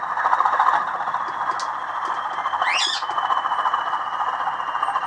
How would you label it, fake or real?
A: real